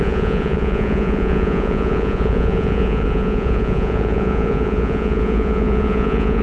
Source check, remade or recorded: remade